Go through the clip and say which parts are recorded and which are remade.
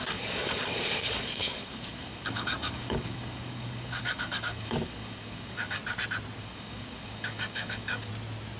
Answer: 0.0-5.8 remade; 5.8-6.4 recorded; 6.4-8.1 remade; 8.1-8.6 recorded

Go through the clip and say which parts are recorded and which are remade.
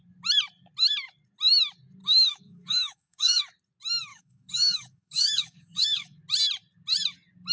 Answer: 0.0-2.0 recorded; 2.0-3.4 remade; 3.4-4.1 recorded; 4.1-6.2 remade; 6.2-7.5 recorded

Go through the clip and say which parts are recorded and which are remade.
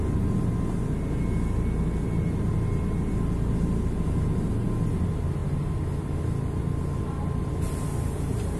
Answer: 0.0-8.6 recorded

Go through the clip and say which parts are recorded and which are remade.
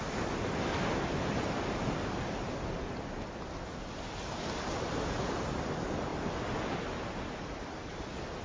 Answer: 0.0-6.1 recorded; 6.1-7.5 remade; 7.5-8.4 recorded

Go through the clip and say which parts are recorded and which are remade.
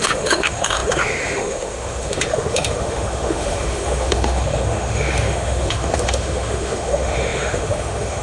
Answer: 0.0-8.2 remade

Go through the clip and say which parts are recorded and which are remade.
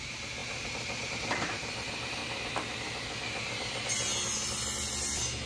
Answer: 0.0-2.2 remade; 2.2-5.5 recorded